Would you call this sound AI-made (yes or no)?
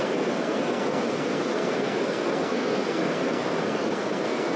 yes